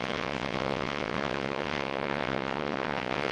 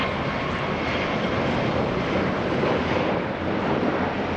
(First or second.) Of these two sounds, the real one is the second